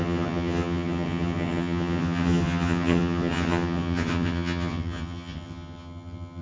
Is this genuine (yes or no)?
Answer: no